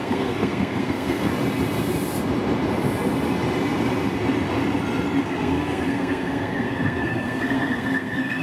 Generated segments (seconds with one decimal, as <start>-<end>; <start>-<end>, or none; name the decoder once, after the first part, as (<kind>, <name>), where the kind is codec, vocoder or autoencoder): 0.0-1.3 (codec, SNAC); 5.2-8.4